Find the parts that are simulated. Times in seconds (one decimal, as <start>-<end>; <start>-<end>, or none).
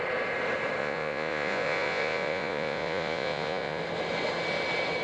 0.8-3.8